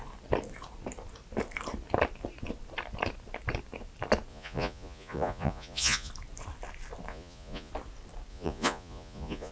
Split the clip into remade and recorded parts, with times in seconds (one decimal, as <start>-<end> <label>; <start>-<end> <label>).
0.0-4.3 recorded; 4.3-6.1 remade; 6.1-7.1 recorded; 7.1-7.7 remade; 7.7-8.3 recorded; 8.3-9.5 remade